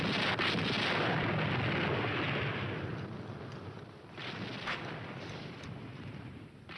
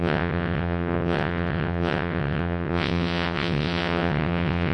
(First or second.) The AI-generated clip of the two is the second